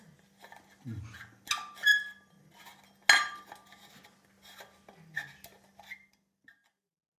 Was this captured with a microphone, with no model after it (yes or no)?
yes